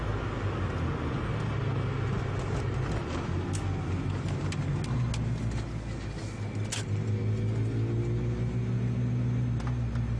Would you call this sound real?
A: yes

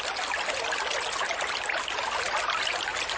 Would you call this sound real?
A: yes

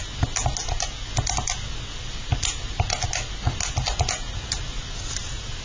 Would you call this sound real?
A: yes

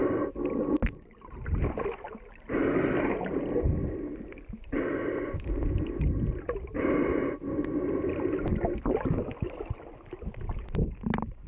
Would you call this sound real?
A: yes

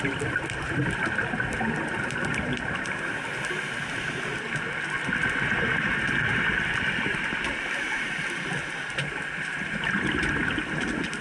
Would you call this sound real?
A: yes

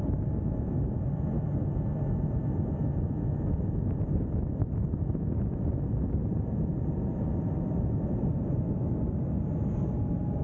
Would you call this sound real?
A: yes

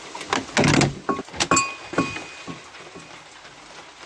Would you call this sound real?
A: yes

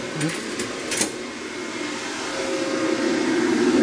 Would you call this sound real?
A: yes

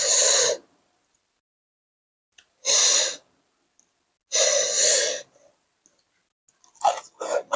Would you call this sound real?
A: yes